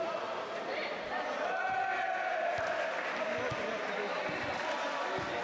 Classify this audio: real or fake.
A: real